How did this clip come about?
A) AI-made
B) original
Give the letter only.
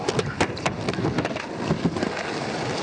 B